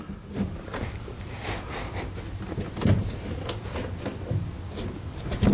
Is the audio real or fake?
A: fake